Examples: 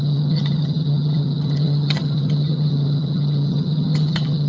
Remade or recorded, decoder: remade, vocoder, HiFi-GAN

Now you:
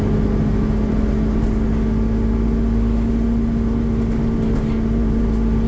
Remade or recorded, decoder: recorded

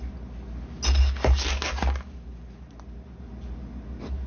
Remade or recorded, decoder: recorded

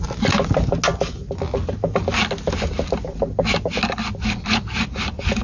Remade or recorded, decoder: recorded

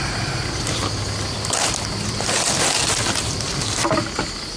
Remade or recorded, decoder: recorded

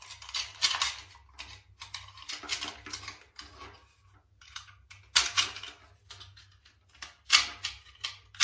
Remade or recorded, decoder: recorded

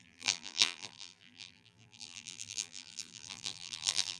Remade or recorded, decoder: remade, vocoder, BigVGAN v2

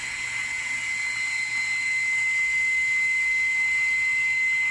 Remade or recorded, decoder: recorded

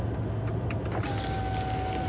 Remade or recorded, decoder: recorded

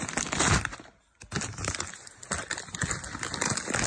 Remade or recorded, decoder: recorded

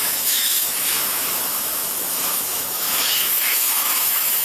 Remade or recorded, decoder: remade, autoencoder, DAC-VAE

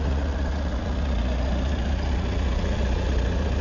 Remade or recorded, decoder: remade, vocoder, Vocos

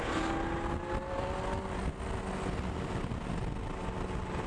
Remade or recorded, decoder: recorded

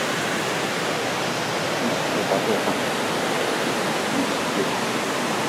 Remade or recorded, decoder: recorded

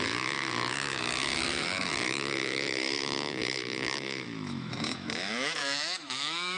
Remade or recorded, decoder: remade, autoencoder, DAC-VAE